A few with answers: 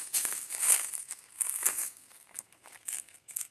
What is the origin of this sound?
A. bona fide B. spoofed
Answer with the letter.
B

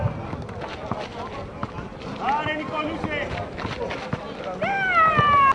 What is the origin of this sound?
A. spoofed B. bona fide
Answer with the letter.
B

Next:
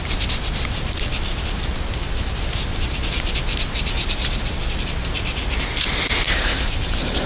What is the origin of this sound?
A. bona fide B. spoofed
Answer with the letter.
A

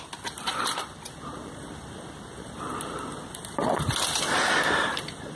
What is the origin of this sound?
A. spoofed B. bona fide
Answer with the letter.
B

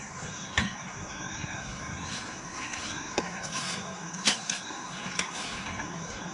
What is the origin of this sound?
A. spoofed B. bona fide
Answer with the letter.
A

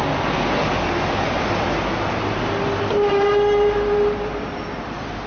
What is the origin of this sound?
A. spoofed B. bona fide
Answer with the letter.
B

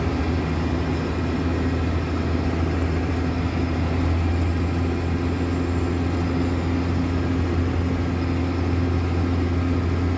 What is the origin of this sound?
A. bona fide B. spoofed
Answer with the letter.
A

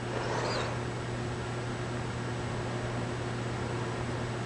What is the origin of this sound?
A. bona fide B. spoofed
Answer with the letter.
A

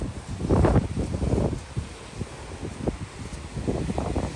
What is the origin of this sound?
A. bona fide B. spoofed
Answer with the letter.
A